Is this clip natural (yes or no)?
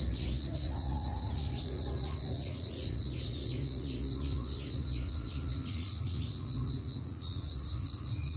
no